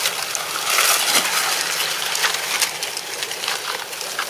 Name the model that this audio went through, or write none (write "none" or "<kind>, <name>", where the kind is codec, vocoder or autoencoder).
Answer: none